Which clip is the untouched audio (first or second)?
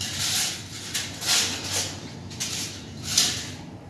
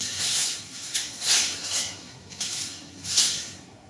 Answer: first